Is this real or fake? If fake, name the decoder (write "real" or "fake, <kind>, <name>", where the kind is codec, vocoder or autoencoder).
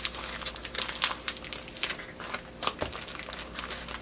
real